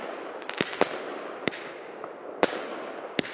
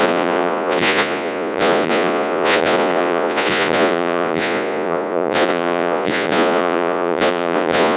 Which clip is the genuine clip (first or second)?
first